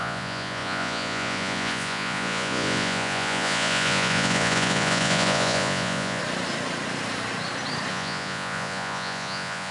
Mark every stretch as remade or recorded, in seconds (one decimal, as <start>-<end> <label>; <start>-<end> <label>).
0.0-6.2 remade; 6.2-7.9 recorded; 7.9-9.7 remade

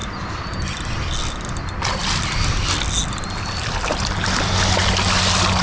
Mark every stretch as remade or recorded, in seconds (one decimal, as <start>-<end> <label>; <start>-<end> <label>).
0.0-5.6 recorded

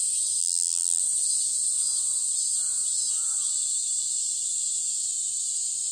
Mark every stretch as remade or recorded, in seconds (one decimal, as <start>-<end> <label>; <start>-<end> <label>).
0.0-0.4 recorded; 0.4-1.0 remade; 1.0-5.9 recorded

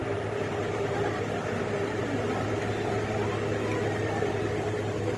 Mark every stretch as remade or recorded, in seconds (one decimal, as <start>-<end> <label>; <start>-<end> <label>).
0.0-5.2 recorded

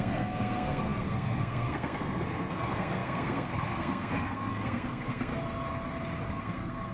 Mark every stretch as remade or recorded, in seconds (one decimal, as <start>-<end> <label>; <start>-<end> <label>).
0.0-5.3 remade; 5.3-6.4 recorded; 6.4-6.9 remade